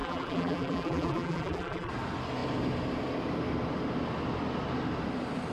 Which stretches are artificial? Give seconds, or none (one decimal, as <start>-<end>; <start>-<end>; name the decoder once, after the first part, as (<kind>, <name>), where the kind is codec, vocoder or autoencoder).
0.0-1.9 (vocoder, BigVGAN v2)